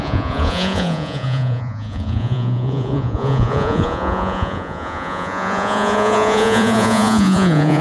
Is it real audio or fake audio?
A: fake